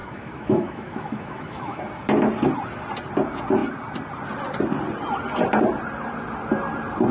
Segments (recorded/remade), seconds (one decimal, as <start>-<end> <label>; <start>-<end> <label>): 0.0-1.8 remade; 1.8-7.1 recorded